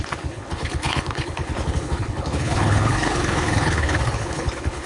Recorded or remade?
remade